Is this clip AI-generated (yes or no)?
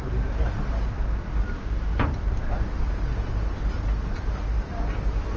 no